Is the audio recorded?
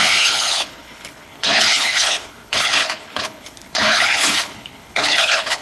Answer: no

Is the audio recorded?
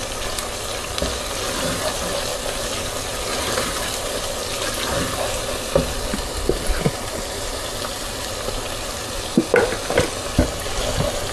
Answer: yes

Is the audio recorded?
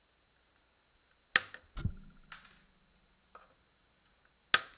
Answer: yes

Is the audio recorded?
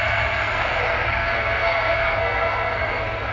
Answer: no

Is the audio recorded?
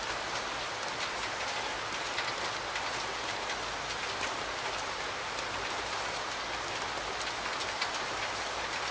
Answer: yes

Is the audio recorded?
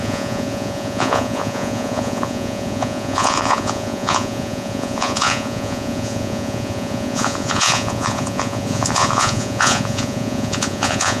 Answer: no